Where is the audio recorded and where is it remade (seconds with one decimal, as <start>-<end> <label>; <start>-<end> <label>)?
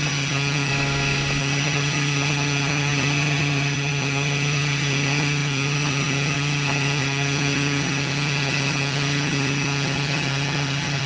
0.0-0.7 remade; 0.7-1.4 recorded; 1.4-11.1 remade